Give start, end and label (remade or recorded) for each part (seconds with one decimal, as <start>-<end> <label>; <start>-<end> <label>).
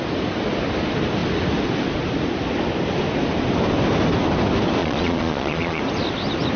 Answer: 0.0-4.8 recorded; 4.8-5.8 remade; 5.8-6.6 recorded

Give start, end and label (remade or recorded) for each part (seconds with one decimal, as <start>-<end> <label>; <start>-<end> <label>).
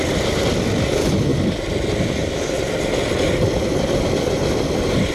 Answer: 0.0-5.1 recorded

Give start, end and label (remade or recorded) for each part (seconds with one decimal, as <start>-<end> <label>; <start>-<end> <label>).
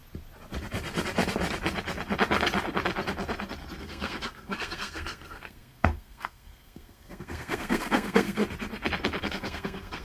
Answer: 0.0-3.8 recorded; 3.8-8.4 remade; 8.4-9.2 recorded; 9.2-10.0 remade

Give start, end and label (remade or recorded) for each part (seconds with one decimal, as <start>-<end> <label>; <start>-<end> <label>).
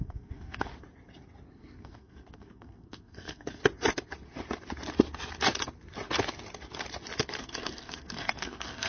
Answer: 0.0-0.7 remade; 0.7-1.5 recorded; 1.5-3.6 remade; 3.6-7.4 recorded; 7.4-8.9 remade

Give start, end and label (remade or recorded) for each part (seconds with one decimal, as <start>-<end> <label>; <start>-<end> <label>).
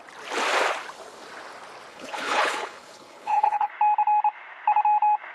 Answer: 0.0-1.9 recorded; 1.9-3.7 remade; 3.7-5.3 recorded